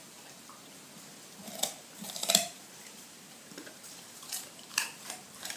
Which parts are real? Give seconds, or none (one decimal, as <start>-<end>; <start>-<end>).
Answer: 0.0-1.6; 5.0-5.6